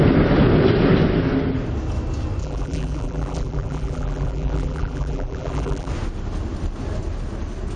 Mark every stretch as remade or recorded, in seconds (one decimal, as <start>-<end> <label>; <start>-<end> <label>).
0.0-2.4 recorded; 2.4-5.9 remade; 5.9-7.8 recorded